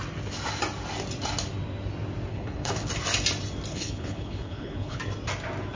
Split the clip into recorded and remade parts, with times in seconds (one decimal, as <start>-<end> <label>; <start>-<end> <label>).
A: 0.0-2.3 recorded; 2.3-2.9 remade; 2.9-3.7 recorded; 3.7-5.0 remade; 5.0-5.8 recorded